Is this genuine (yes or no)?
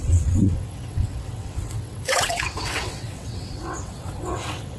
no